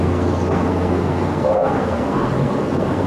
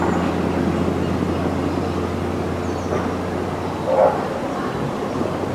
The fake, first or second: first